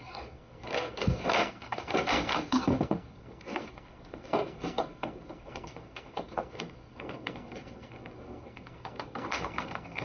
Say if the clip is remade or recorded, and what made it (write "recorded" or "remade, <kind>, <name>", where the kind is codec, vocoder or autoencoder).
remade, codec, SNAC